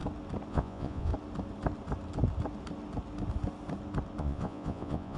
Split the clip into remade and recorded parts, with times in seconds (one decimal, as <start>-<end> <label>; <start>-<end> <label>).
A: 0.0-0.5 recorded; 0.5-1.1 remade; 1.1-4.2 recorded; 4.2-5.2 remade